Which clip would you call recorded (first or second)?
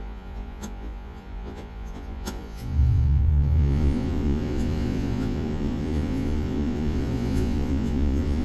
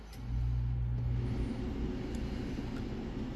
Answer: second